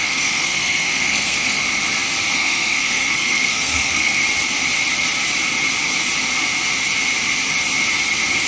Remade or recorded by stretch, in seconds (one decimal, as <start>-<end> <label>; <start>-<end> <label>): 0.0-1.6 remade; 1.6-2.3 recorded; 2.3-4.2 remade; 4.2-8.5 recorded